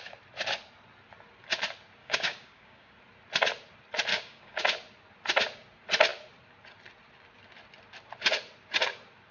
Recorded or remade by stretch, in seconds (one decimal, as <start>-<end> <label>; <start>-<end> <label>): 0.0-2.0 recorded; 2.0-2.9 remade; 2.9-4.1 recorded; 4.1-4.6 remade; 4.6-9.3 recorded